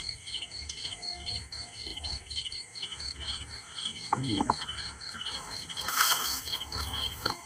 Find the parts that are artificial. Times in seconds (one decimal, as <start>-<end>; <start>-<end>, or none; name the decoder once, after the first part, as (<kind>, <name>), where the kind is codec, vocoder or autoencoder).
0.0-7.5 (codec, DAC)